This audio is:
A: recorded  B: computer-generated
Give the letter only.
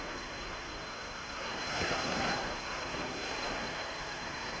B